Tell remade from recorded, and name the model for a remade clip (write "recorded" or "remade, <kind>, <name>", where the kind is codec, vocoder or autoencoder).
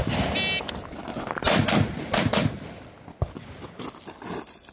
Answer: recorded